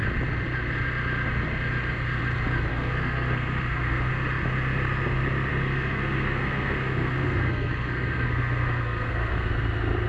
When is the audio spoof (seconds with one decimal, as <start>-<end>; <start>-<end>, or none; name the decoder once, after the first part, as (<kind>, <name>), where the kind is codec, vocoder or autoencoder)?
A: 2.7-4.1 (codec, SNAC); 5.5-9.5